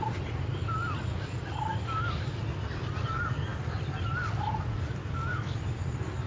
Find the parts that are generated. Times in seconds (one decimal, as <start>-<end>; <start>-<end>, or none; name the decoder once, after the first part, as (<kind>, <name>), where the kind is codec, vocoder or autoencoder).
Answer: 1.7-2.4 (codec, DAC); 5.0-5.6